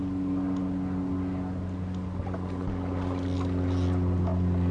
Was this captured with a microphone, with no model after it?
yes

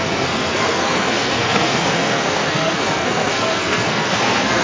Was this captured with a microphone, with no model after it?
no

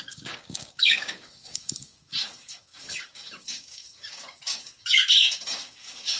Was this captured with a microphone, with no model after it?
no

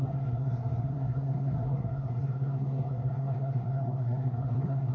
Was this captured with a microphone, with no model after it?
no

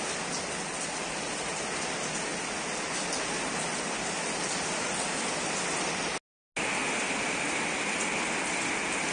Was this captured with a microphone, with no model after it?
yes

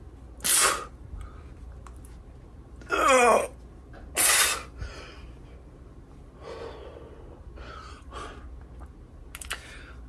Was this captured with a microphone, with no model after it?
yes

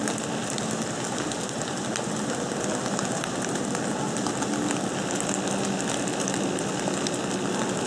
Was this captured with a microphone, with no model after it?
yes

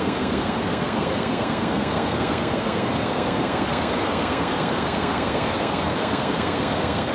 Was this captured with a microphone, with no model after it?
no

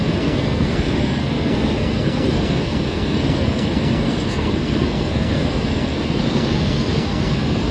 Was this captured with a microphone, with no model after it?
no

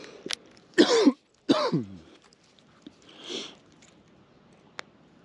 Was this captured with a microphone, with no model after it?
yes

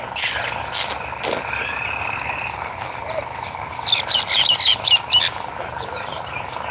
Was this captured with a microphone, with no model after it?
yes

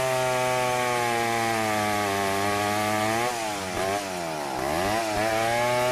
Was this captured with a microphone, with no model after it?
yes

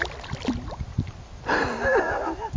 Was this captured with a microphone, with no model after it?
yes